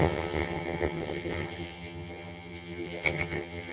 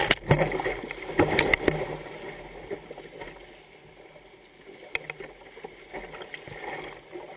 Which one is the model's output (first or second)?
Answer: first